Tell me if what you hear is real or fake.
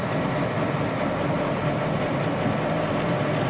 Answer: real